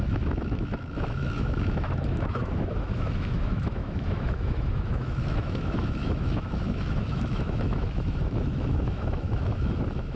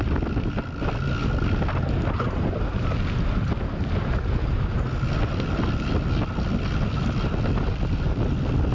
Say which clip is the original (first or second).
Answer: second